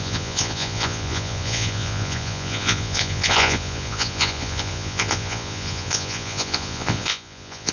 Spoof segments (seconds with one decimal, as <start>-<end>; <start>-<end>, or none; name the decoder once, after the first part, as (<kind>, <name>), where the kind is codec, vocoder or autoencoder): 0.0-7.7 (vocoder, Vocos)